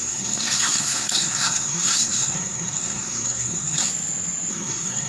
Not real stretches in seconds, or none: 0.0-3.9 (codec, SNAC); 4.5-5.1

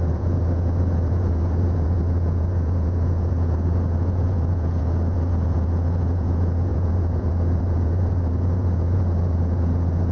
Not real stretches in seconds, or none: 0.0-10.1 (vocoder, Vocos)

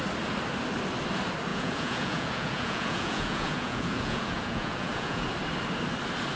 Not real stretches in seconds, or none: 1.5-5.3 (vocoder, Vocos)

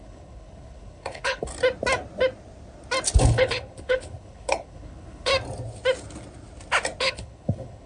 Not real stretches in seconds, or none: 0.0-1.5 (codec, HILCodec); 3.2-5.3; 7.0-7.9